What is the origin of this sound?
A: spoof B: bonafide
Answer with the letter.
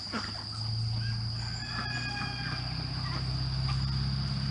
B